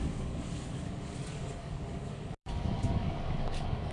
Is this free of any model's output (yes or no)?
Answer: no